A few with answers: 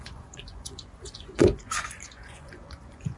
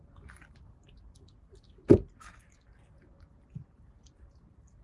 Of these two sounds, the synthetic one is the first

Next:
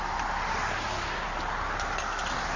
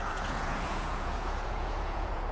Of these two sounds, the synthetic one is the second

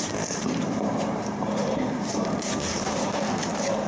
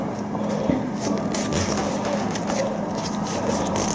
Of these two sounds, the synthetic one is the first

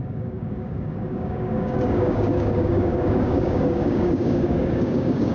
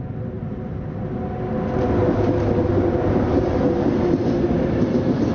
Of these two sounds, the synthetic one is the first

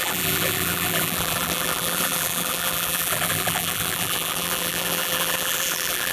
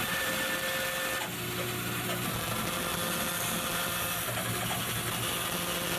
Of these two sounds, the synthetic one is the first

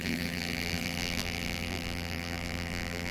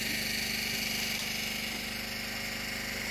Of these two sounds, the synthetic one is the first